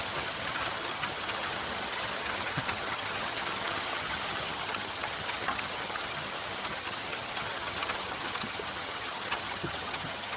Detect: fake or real fake